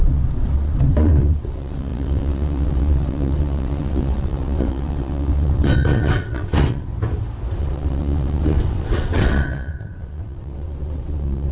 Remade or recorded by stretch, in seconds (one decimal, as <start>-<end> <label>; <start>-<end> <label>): 0.0-6.9 remade; 6.9-7.6 recorded; 7.6-11.5 remade